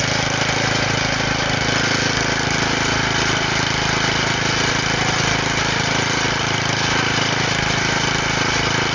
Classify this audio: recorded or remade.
recorded